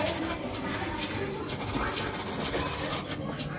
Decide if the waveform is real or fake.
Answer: real